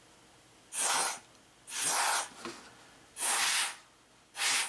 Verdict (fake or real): real